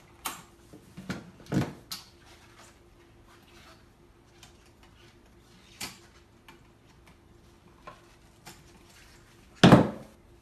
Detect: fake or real real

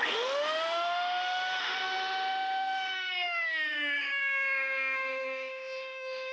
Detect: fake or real fake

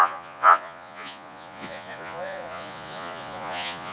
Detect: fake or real fake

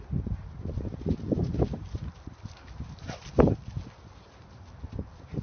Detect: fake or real real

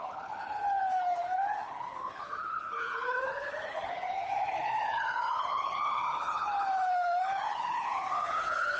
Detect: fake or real fake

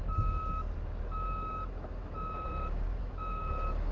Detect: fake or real fake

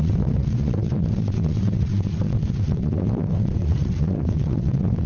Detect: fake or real fake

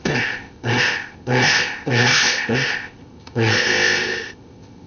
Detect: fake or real fake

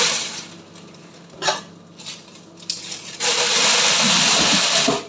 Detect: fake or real real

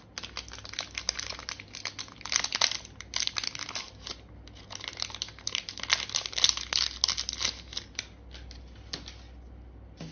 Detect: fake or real real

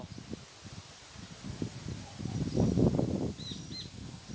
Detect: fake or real real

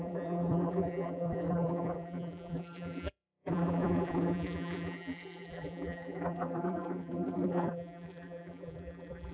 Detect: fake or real fake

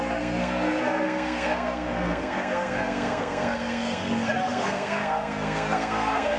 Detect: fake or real fake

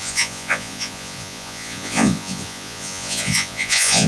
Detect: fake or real fake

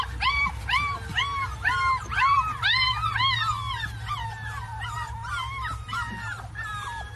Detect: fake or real real